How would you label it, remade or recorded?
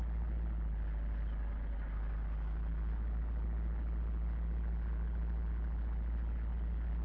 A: recorded